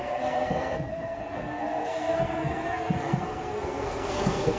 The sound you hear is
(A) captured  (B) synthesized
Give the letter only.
B